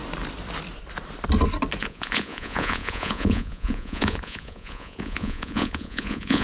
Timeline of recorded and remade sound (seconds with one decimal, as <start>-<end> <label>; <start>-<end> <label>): 0.0-1.8 recorded; 1.8-6.4 remade